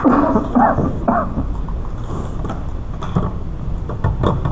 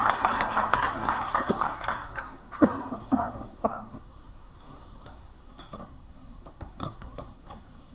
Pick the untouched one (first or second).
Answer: first